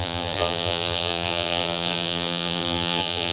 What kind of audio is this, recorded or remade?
remade